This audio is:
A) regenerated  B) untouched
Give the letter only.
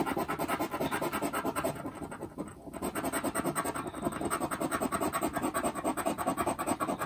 B